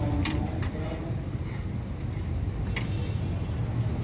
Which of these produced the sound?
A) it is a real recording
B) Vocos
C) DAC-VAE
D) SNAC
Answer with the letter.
A